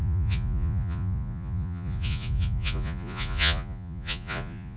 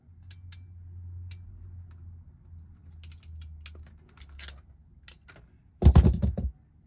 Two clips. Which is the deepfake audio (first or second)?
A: first